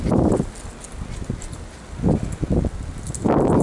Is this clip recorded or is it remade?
recorded